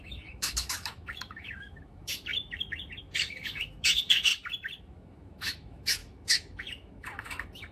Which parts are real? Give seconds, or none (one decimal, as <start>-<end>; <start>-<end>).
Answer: 4.3-4.8